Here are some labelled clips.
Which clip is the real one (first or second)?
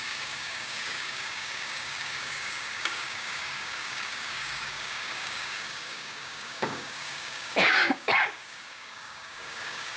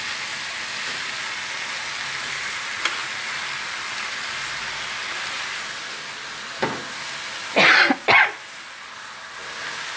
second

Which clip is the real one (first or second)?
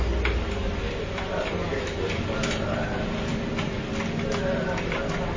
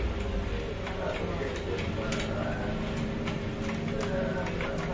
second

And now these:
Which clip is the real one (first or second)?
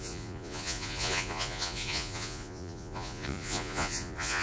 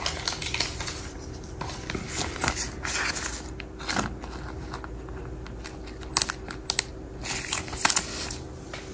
second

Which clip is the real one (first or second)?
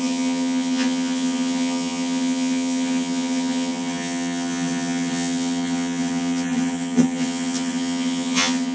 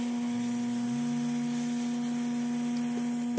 second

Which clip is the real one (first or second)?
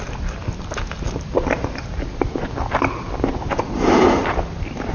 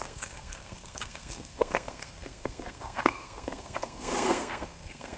first